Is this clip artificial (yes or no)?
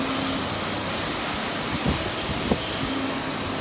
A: no